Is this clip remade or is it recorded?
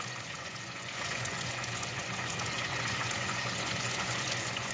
remade